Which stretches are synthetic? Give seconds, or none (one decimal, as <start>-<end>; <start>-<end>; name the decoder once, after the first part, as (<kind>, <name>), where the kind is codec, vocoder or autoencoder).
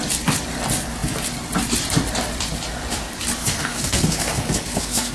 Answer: 3.4-5.1 (codec, SNAC)